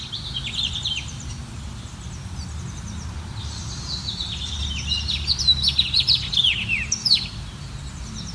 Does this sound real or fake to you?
real